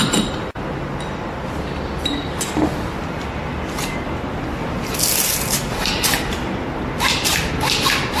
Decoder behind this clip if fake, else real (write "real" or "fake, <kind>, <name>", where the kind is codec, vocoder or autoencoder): real